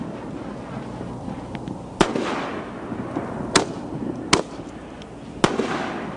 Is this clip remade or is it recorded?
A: recorded